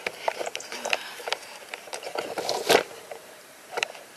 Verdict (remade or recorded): remade